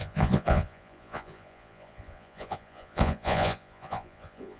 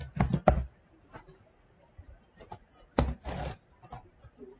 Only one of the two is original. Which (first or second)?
second